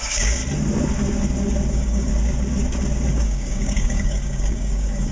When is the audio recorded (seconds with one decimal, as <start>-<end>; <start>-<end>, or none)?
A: 0.4-1.7; 2.1-3.1